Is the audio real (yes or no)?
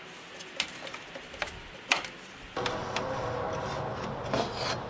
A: yes